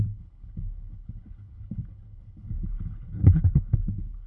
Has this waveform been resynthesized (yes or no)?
yes